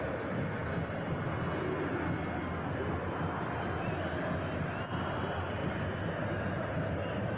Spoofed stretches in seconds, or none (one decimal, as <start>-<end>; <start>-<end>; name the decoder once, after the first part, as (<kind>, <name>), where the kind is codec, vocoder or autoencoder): none